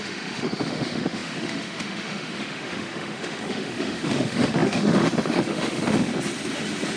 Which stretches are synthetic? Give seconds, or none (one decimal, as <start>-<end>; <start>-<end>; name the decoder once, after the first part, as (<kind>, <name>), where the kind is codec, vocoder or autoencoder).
0.0-6.1 (autoencoder, DAC-VAE)